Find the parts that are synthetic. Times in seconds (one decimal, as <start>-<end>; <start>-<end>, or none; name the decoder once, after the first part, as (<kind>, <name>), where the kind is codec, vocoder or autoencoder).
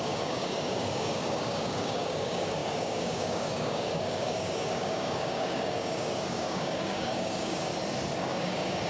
0.0-7.7 (codec, DAC); 8.2-8.9